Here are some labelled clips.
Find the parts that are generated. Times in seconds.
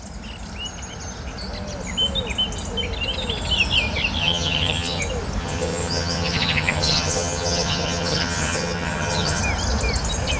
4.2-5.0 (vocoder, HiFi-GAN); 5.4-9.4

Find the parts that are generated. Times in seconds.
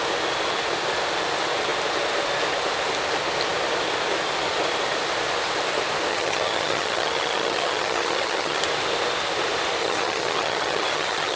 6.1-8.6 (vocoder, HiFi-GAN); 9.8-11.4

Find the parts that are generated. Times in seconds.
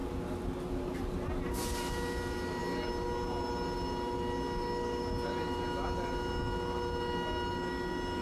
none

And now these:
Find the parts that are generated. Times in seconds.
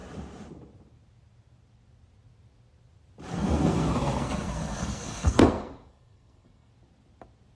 3.3-6.7 (codec, SNAC)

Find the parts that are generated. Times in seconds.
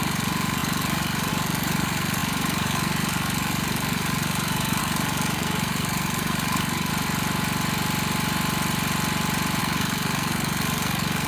0.0-6.9 (codec, SNAC); 9.6-11.3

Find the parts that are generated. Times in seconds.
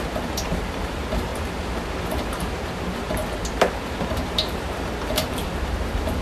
0.0-1.3 (vocoder, BigVGAN v2); 2.0-3.2; 3.7-6.2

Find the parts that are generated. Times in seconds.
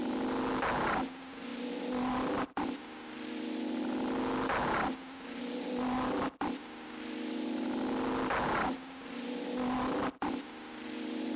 none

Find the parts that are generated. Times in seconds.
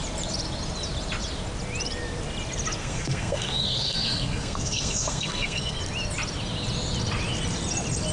2.8-5.8 (codec, SNAC)